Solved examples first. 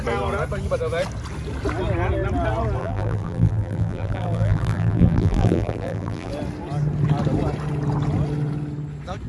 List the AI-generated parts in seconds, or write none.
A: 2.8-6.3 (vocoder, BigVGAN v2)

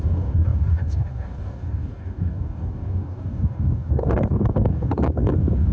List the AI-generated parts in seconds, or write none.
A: 0.0-5.7 (codec, DAC)

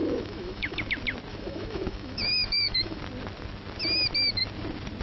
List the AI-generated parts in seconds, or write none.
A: 0.0-0.8 (autoencoder, DAC-VAE); 1.3-3.0